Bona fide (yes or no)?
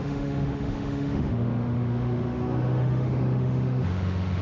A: no